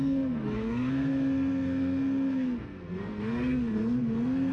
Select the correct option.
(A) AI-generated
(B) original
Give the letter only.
A